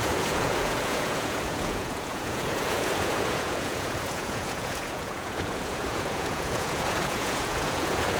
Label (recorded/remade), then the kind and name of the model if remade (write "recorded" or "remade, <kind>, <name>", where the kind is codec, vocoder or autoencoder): remade, vocoder, Vocos